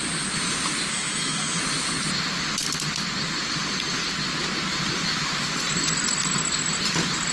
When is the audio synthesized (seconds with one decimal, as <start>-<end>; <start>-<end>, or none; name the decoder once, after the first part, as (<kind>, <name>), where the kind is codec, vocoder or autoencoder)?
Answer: 0.9-1.6 (autoencoder, DAC-VAE)